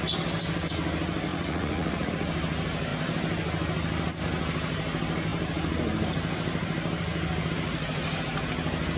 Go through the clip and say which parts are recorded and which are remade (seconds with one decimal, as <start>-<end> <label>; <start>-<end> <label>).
0.0-1.3 recorded; 1.3-2.1 remade; 2.1-9.0 recorded